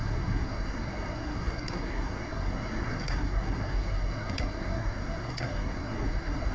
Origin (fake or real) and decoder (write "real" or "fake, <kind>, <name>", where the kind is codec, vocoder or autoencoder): fake, codec, SNAC